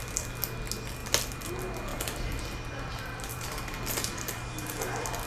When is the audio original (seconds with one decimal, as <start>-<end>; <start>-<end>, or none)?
0.0-1.9; 4.8-5.3